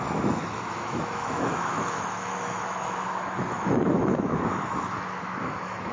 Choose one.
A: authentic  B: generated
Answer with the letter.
B